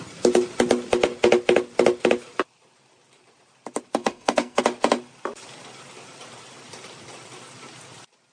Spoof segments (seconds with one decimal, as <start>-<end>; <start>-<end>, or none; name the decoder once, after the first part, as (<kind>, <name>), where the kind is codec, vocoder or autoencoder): 4.0-4.6 (codec, SNAC)